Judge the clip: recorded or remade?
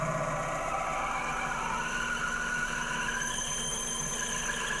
recorded